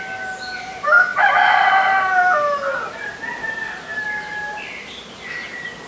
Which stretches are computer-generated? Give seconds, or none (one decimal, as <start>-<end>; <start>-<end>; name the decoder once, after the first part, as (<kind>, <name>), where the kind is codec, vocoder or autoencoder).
none

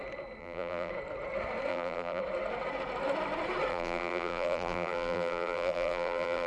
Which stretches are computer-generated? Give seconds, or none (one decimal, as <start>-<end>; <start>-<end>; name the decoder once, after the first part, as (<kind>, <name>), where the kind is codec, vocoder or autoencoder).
0.4-0.9 (vocoder, BigVGAN v2); 1.7-2.2; 3.7-6.5

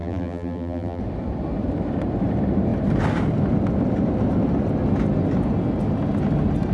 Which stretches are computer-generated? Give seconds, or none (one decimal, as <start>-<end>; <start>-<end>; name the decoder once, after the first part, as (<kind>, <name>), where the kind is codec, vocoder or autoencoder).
0.0-1.0 (vocoder, BigVGAN v2)

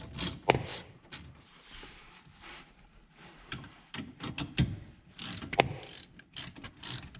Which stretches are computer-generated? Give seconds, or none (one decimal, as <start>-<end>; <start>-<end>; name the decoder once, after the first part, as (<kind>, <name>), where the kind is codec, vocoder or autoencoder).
0.7-4.3 (vocoder, BigVGAN v2)

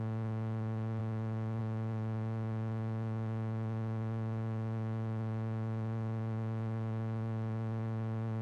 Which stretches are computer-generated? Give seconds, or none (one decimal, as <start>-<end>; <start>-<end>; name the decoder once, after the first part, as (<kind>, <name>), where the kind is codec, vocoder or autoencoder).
none

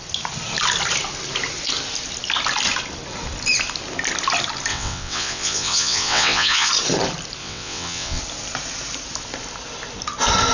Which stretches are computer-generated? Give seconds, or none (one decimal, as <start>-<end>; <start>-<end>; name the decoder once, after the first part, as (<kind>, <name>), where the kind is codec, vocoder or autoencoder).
4.7-6.7 (vocoder, WaveNeXt); 7.4-8.2